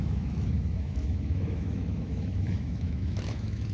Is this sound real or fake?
fake